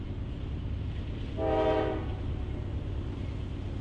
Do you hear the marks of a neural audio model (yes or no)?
no